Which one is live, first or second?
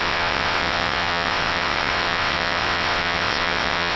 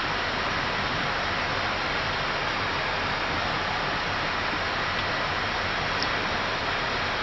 second